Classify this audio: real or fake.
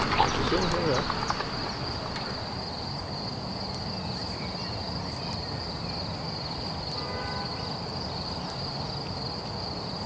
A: real